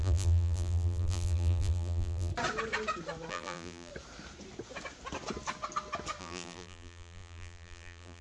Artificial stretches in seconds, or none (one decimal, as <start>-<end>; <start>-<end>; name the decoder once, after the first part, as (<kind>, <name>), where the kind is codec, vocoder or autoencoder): 0.0-2.3 (vocoder, BigVGAN v2); 3.3-3.9; 6.2-8.2